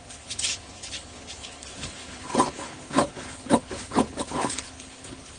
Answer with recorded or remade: remade